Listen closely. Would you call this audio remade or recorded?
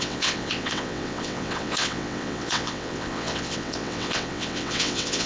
remade